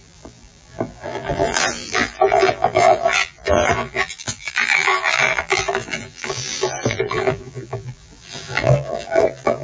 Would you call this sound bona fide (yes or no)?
no